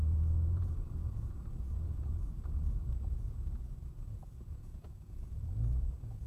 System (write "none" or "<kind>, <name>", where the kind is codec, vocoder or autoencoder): vocoder, Vocos